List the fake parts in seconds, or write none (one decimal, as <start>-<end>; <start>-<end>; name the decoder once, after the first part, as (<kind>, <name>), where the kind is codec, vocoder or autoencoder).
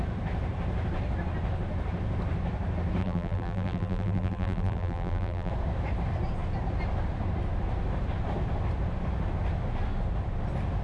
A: 3.0-5.5 (vocoder, BigVGAN v2)